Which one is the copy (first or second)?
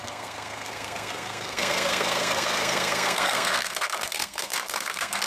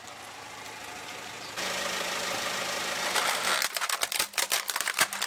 first